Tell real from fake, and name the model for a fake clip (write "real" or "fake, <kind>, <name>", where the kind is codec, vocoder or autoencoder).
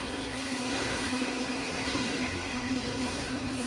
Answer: fake, codec, SNAC